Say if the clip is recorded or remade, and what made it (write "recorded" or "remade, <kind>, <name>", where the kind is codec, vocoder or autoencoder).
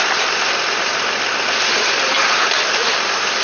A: remade, vocoder, BigVGAN v2